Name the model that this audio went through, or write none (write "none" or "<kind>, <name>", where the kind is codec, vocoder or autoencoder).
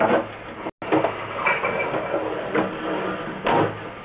none